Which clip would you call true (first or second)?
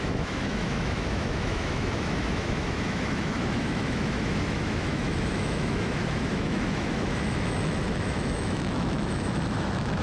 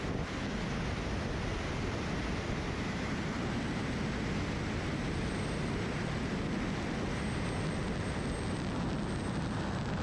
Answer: second